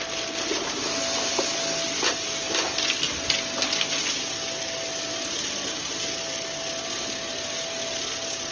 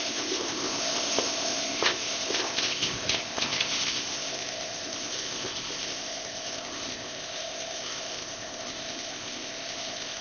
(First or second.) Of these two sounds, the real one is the first